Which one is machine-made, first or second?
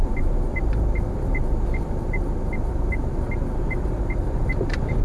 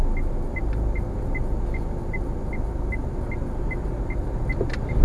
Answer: first